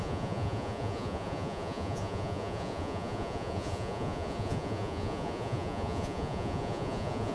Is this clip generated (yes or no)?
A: yes